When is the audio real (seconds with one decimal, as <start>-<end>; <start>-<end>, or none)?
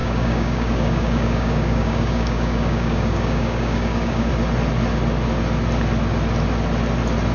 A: 4.3-7.3